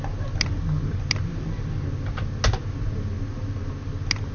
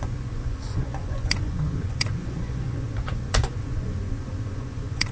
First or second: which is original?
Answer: first